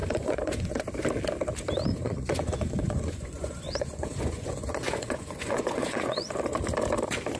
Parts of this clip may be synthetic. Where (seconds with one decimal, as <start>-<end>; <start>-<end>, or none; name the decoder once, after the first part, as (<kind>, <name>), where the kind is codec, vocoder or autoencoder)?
0.0-0.8 (vocoder, Vocos); 1.9-6.3